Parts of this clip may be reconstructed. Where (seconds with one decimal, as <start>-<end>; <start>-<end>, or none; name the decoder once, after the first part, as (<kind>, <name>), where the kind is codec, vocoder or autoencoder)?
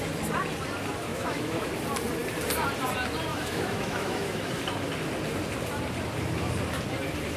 1.1-1.7 (autoencoder, DAC-VAE); 3.3-4.5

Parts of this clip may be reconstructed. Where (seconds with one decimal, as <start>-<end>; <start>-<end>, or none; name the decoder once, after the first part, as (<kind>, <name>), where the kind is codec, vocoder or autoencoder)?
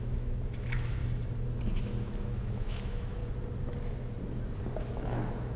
0.0-1.0 (autoencoder, DAC-VAE); 1.8-3.2; 4.8-5.6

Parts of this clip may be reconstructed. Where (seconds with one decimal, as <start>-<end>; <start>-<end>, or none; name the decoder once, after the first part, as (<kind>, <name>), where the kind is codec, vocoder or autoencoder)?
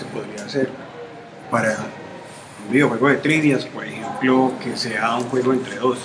none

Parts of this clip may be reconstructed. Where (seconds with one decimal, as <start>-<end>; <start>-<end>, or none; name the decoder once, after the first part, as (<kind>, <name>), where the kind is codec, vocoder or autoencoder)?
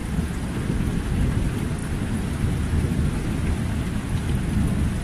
none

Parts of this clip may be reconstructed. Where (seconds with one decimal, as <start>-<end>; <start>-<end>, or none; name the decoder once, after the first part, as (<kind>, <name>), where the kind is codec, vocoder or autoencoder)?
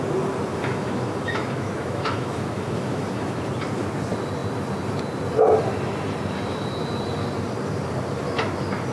0.5-3.4 (autoencoder, DAC-VAE)